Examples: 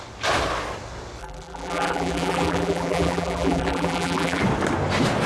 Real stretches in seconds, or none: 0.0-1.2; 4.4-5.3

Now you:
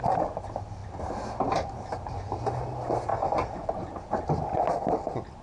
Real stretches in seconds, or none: 0.0-5.4